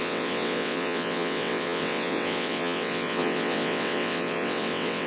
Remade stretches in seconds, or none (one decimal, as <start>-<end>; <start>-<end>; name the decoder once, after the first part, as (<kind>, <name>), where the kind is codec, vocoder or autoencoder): 0.0-5.1 (vocoder, WaveNeXt)

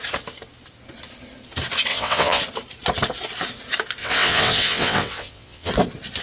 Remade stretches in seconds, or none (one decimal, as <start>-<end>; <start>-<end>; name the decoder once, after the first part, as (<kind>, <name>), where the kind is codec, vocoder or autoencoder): 1.9-2.4 (vocoder, WaveNeXt); 4.0-5.7

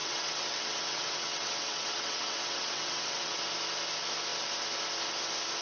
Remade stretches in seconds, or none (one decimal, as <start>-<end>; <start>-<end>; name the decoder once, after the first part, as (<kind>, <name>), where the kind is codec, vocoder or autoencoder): 0.0-3.4 (vocoder, WaveNeXt)

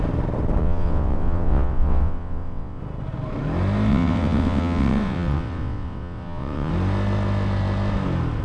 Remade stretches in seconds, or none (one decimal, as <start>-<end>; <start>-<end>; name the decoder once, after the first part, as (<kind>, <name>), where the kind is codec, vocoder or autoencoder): 0.6-2.8 (vocoder, WaveNeXt); 3.9-6.7